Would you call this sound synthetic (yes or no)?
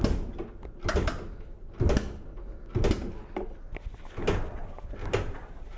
no